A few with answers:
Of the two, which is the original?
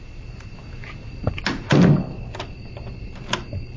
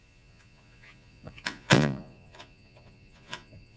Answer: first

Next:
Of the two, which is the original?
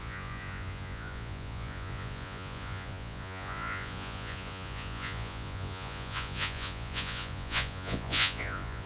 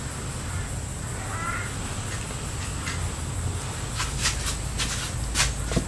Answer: second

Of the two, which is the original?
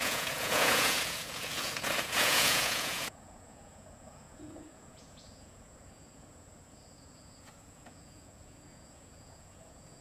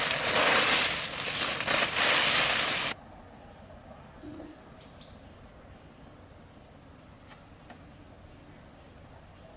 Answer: second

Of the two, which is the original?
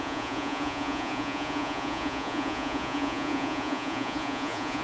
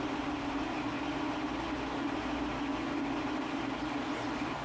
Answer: second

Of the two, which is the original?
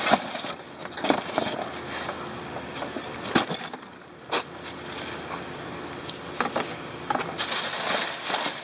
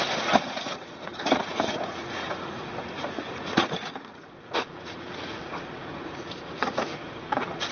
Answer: first